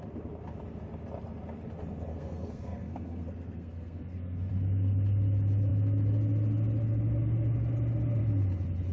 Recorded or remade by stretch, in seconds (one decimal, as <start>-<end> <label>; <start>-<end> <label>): 0.0-2.1 recorded; 2.1-4.5 remade; 4.5-8.9 recorded